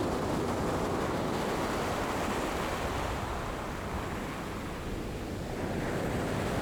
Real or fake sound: real